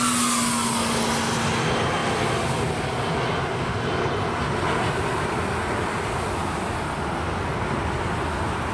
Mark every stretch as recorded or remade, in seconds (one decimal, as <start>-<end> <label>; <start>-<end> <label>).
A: 0.0-8.7 recorded

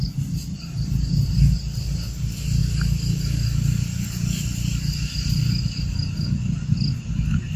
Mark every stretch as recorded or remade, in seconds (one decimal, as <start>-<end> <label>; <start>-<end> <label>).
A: 0.0-7.6 recorded

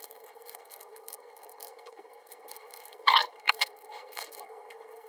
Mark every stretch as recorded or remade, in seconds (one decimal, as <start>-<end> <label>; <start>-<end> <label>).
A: 0.0-5.1 remade